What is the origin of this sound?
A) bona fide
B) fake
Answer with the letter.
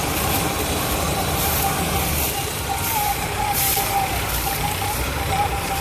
B